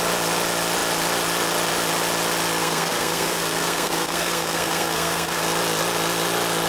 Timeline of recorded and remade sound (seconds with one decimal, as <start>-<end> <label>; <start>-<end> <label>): 0.0-2.6 recorded; 2.6-5.4 remade; 5.4-6.7 recorded